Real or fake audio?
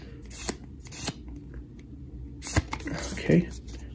real